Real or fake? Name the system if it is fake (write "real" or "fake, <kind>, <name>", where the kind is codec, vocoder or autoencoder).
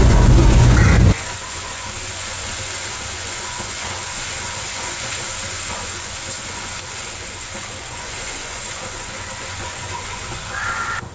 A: fake, vocoder, Vocos